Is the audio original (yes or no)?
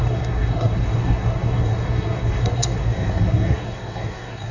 no